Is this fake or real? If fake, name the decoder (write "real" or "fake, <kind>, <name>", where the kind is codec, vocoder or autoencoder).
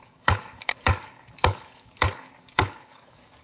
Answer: fake, codec, DAC